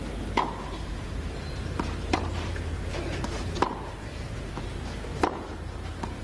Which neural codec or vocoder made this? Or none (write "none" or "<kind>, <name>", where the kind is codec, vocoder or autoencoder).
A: vocoder, BigVGAN v2